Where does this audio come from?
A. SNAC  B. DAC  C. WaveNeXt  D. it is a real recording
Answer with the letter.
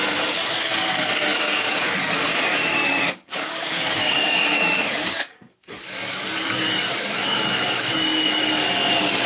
B